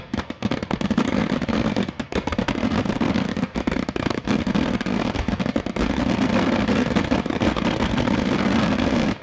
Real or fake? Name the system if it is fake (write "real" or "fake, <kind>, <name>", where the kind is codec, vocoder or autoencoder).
fake, codec, SNAC